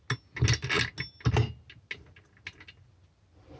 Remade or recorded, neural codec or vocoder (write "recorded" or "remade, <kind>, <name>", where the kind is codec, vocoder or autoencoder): recorded